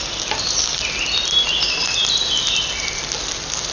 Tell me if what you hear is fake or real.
real